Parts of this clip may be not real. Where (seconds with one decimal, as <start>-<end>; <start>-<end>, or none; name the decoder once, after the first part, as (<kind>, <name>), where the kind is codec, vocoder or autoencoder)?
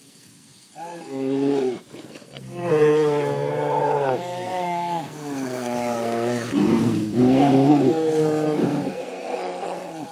0.0-10.1 (codec, SNAC)